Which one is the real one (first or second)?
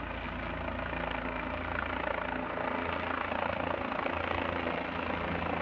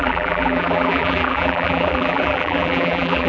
first